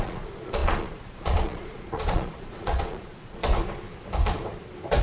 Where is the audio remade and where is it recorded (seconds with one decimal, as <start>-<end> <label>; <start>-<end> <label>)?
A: 0.0-3.4 remade; 3.4-5.0 recorded